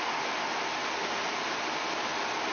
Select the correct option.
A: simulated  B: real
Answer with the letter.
B